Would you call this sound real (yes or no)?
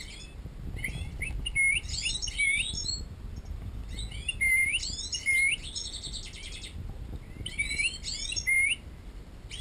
yes